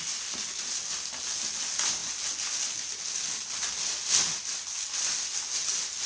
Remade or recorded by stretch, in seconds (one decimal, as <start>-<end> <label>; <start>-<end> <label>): 0.0-6.1 recorded